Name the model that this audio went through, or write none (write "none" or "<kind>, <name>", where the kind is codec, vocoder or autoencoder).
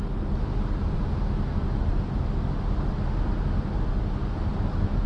none